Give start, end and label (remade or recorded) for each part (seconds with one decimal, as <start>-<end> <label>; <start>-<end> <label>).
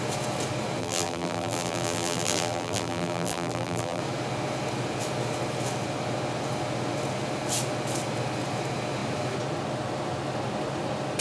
0.0-0.8 recorded; 0.8-4.0 remade; 4.0-11.2 recorded